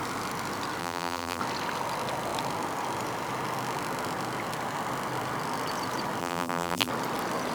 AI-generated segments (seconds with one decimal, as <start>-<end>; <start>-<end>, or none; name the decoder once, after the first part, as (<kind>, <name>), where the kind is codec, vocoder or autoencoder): 0.8-1.4 (vocoder, BigVGAN v2); 6.2-6.9

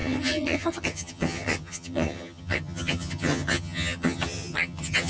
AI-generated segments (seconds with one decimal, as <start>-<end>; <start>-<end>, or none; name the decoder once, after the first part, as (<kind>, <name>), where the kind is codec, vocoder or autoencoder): 0.0-5.1 (vocoder, HiFi-GAN)

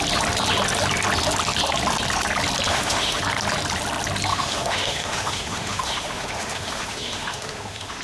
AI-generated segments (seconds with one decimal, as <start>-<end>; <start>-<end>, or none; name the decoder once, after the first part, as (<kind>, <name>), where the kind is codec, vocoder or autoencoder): 2.7-3.2 (autoencoder, DAC-VAE); 4.3-8.0

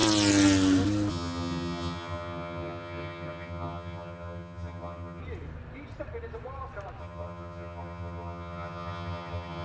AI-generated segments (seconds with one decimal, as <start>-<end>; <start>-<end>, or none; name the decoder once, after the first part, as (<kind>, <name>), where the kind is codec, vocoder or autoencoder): 1.1-5.2 (vocoder, HiFi-GAN); 7.0-9.6